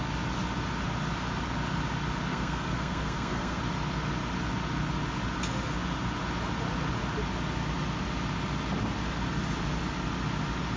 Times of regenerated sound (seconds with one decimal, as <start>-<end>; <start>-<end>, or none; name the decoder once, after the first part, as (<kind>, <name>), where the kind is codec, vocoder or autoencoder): 2.3-3.6 (codec, SNAC)